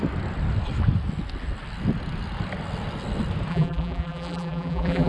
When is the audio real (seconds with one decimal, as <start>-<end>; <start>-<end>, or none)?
0.0-3.5